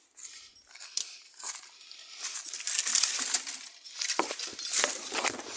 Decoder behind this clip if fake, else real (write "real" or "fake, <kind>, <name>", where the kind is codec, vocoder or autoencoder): real